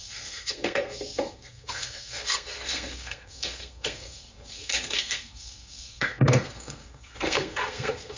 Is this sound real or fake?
fake